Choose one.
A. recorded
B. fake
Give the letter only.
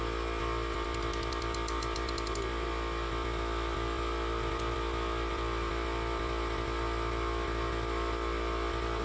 A